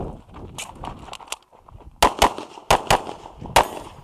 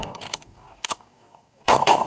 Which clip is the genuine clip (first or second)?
first